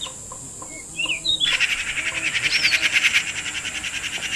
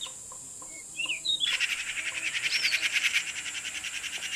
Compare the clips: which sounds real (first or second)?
first